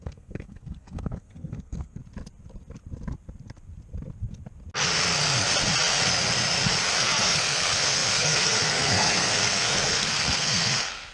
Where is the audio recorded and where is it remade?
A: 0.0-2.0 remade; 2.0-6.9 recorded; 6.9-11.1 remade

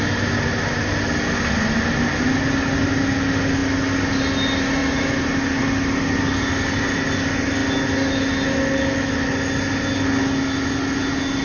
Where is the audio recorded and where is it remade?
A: 0.0-11.4 recorded

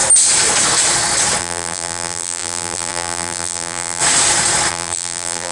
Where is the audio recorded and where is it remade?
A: 0.0-1.4 recorded; 1.4-4.0 remade; 4.0-4.7 recorded; 4.7-5.5 remade

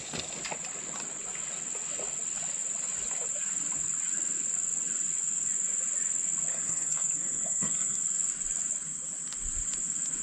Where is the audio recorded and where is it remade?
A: 0.0-6.5 recorded; 6.5-8.0 remade; 8.0-10.2 recorded

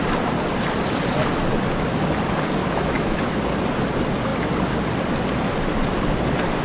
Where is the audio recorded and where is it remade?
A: 0.0-2.6 recorded; 2.6-3.4 remade; 3.4-6.6 recorded

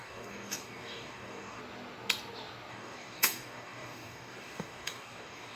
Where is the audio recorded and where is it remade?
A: 0.0-1.6 remade; 1.6-2.7 recorded; 2.7-5.6 remade

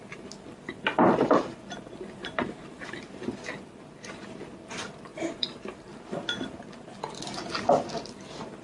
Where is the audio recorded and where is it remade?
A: 0.0-2.2 recorded; 2.2-3.0 remade; 3.0-5.1 recorded; 5.1-6.0 remade; 6.0-8.6 recorded

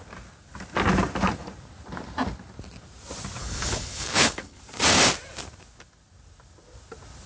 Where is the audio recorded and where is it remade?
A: 0.0-3.4 recorded; 3.4-4.6 remade; 4.6-7.3 recorded